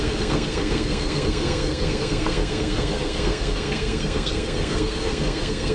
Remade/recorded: remade